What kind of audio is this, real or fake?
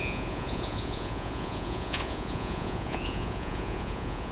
fake